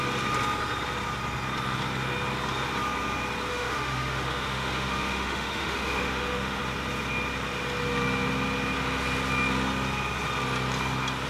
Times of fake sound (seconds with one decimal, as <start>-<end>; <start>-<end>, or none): 3.5-6.6